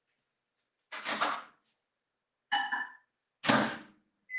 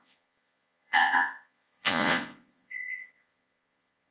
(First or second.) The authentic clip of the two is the first